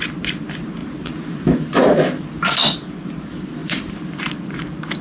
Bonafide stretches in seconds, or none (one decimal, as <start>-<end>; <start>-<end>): 0.0-0.8; 2.2-3.6